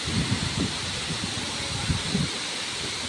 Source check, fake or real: real